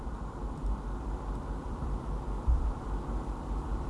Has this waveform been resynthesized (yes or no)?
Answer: yes